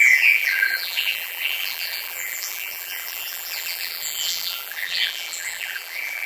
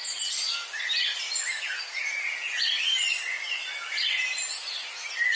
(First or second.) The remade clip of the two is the first